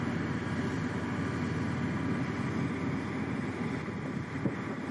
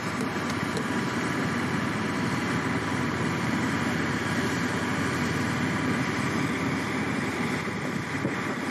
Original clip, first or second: first